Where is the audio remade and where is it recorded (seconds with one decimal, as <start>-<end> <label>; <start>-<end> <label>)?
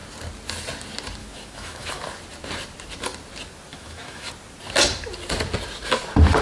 0.0-1.2 recorded; 1.2-2.0 remade; 2.0-3.7 recorded; 3.7-4.3 remade; 4.3-6.4 recorded